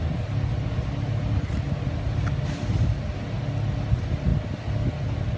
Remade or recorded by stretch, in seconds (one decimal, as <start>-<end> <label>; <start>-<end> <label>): 0.0-5.4 recorded